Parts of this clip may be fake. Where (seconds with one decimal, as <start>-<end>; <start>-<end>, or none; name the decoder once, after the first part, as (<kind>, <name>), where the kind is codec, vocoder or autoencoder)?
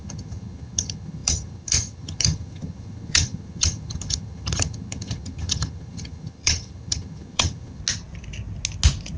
0.0-7.8 (vocoder, HiFi-GAN)